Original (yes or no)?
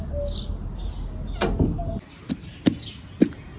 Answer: yes